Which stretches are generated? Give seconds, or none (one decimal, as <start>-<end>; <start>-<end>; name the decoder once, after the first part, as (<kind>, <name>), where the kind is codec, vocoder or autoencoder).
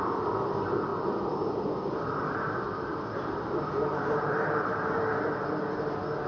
2.9-5.0 (vocoder, BigVGAN v2)